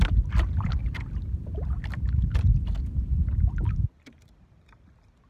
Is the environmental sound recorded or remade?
recorded